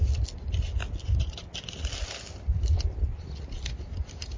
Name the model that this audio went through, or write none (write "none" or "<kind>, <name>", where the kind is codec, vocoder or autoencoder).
none